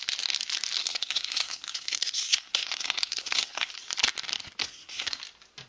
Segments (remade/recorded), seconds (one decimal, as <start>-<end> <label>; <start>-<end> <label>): 0.0-0.8 recorded; 0.8-3.7 remade; 3.7-4.6 recorded; 4.6-5.2 remade; 5.2-5.7 recorded